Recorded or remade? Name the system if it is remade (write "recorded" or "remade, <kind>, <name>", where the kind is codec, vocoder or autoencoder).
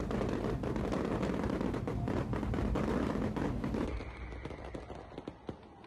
recorded